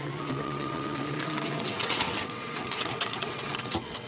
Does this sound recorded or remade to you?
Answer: remade